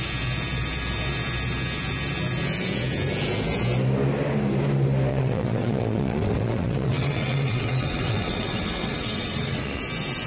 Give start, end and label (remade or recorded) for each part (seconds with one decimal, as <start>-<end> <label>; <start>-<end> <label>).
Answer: 0.0-5.1 recorded; 5.1-9.8 remade; 9.8-10.3 recorded